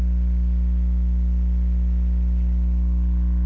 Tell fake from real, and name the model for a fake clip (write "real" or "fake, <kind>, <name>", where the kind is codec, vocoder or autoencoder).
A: real